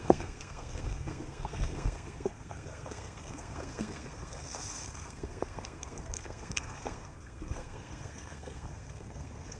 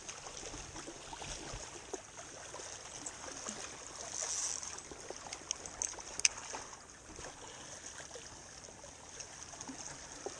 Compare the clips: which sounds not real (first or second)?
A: first